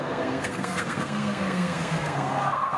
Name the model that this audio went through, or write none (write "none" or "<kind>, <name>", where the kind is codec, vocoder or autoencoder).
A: codec, SNAC